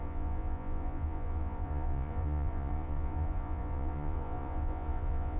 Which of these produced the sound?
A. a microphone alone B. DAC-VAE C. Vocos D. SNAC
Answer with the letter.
C